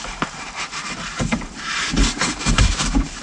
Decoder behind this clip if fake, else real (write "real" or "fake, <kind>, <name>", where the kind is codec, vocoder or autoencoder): fake, vocoder, BigVGAN v2